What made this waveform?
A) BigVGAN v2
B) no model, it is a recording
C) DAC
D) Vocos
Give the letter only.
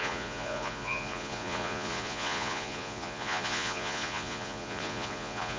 D